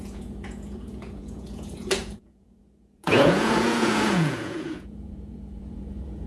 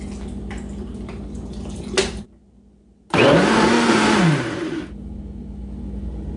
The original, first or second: second